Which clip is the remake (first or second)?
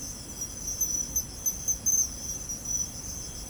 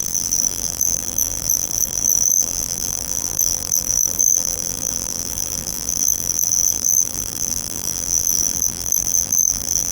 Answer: second